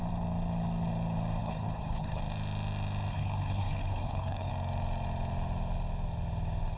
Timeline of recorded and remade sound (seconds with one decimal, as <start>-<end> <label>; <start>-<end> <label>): 0.0-1.4 recorded; 1.4-2.2 remade; 2.2-3.1 recorded; 3.1-4.5 remade; 4.5-6.8 recorded